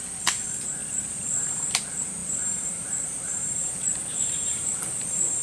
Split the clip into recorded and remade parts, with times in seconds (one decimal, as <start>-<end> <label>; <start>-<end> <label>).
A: 0.0-0.8 recorded; 0.8-1.7 remade; 1.7-2.2 recorded; 2.2-5.4 remade